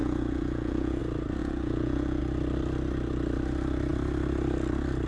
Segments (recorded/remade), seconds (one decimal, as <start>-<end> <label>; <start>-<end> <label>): 0.0-1.0 remade; 1.0-1.4 recorded; 1.4-2.2 remade; 2.2-5.1 recorded